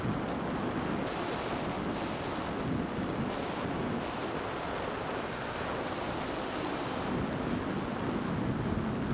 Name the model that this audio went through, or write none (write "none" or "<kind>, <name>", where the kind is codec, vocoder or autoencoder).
none